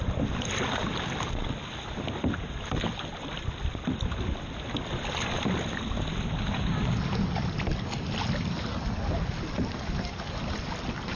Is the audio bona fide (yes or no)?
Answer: yes